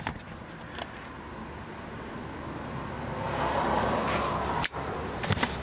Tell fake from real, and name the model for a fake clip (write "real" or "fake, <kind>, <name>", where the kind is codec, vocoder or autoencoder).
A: real